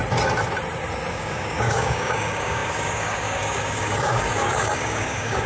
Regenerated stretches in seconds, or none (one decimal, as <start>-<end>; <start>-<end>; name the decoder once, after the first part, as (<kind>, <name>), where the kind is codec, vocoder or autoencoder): 1.1-5.5 (codec, DAC)